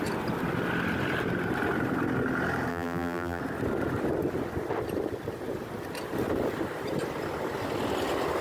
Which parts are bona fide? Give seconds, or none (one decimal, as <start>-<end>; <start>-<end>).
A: 0.0-2.7; 3.4-8.4